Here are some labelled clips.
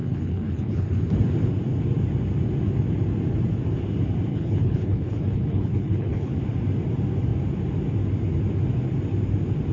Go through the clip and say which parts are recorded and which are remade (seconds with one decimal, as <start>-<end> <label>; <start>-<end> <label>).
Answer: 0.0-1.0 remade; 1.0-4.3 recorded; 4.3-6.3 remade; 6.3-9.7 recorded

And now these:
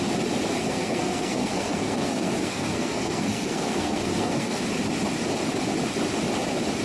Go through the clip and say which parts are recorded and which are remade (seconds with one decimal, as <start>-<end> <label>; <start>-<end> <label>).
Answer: 0.0-0.6 recorded; 0.6-4.6 remade; 4.6-6.8 recorded

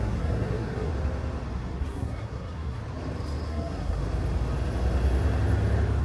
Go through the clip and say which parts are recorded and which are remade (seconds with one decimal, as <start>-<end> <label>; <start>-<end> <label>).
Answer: 0.0-0.9 remade; 0.9-1.8 recorded; 1.8-2.8 remade; 2.8-3.5 recorded; 3.5-4.0 remade; 4.0-6.0 recorded